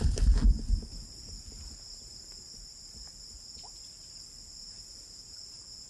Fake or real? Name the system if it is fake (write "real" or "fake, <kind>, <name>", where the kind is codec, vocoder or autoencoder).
real